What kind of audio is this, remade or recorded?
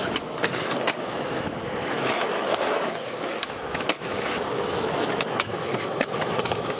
remade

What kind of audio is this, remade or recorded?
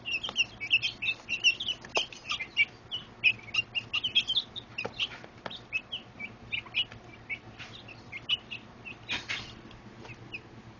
recorded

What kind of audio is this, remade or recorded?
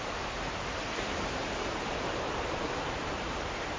remade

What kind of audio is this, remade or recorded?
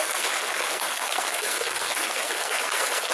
remade